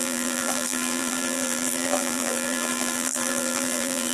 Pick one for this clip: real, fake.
fake